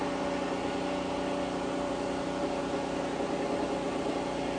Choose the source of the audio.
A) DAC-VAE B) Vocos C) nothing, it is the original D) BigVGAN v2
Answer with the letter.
C